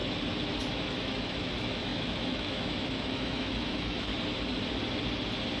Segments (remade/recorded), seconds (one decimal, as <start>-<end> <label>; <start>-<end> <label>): 0.0-0.7 recorded; 0.7-4.1 remade; 4.1-5.6 recorded